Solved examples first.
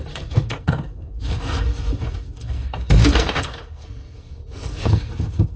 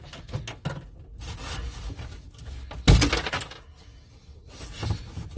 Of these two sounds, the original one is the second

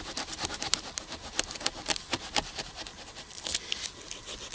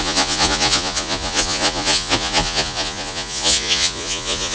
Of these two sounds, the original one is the first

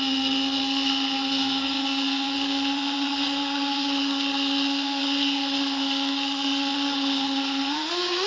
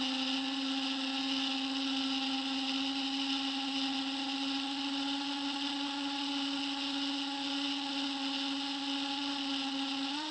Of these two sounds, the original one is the second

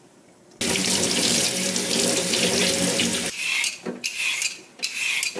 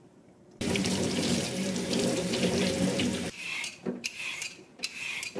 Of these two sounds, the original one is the first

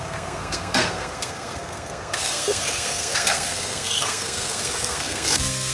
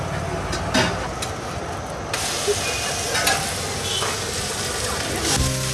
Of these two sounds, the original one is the second